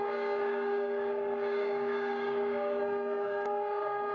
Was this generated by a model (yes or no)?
yes